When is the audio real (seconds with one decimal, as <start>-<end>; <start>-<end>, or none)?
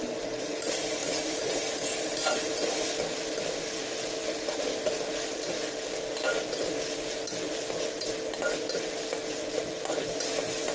0.0-10.7